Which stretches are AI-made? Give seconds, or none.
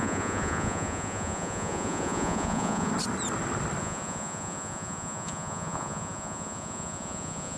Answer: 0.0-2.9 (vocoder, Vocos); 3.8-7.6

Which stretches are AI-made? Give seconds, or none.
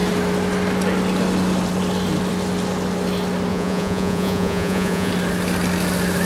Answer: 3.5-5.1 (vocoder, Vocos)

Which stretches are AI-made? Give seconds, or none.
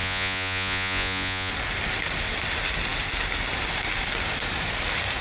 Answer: 0.0-1.5 (vocoder, Vocos)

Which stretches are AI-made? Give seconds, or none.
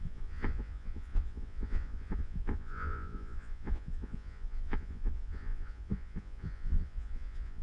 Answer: 0.0-7.6 (vocoder, Vocos)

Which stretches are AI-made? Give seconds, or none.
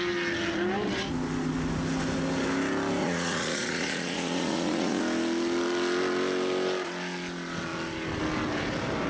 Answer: 3.0-5.0 (vocoder, Vocos)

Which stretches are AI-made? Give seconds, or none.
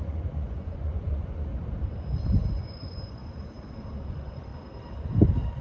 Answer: 0.0-1.5 (vocoder, Vocos); 2.5-3.2; 4.1-4.5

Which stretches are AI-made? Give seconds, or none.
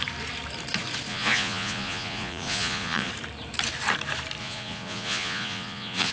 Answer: 1.1-3.1 (vocoder, Vocos); 4.4-6.1